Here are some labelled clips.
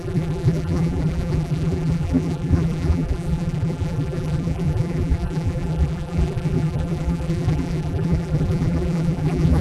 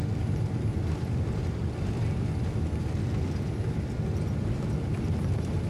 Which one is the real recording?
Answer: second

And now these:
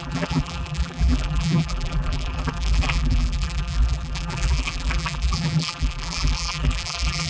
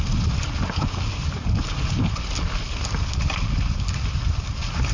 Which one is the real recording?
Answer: second